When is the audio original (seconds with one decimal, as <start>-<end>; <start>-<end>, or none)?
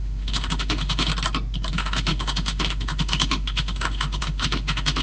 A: 1.1-1.7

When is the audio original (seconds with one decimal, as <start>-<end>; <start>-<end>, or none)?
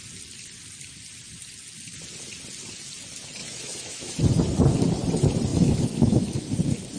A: 0.0-3.4; 4.2-5.5; 6.5-7.0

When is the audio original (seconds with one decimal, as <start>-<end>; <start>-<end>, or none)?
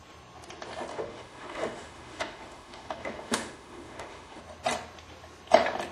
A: 0.0-0.9; 4.4-5.9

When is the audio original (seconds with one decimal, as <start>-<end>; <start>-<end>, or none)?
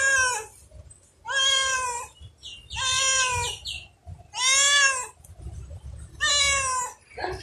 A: 0.0-7.4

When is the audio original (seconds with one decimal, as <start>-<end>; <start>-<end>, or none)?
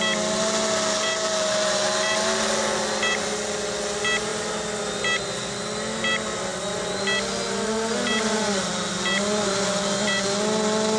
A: 0.0-11.0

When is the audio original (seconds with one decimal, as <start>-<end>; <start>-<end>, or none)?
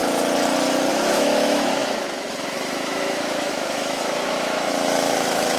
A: 0.0-0.9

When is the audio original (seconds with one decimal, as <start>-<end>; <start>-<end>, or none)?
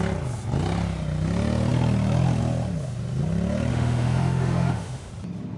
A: 0.0-3.7; 5.1-5.6